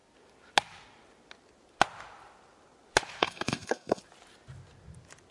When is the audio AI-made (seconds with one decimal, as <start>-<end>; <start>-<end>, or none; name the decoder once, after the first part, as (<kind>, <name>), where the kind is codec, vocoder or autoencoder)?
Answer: 3.2-4.0 (codec, SNAC)